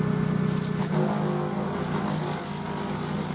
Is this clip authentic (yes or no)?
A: yes